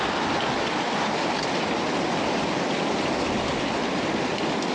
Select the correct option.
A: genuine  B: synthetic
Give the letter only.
A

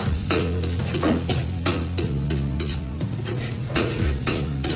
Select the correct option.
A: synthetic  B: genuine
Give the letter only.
A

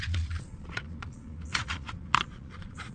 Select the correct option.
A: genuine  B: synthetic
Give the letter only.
B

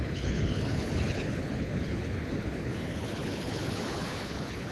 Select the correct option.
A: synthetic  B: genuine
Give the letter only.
A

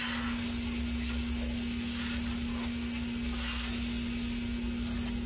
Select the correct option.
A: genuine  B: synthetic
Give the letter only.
A